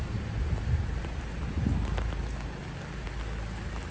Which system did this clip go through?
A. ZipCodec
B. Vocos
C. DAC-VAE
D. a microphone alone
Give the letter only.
D